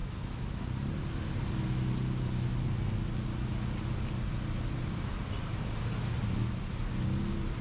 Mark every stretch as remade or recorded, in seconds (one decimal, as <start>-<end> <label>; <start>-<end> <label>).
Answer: 0.0-0.6 remade; 0.6-7.6 recorded